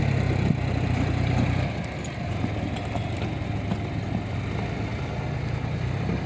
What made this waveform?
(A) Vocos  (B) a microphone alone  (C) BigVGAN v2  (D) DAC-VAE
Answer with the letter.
B